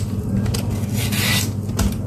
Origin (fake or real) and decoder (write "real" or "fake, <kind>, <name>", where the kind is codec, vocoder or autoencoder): real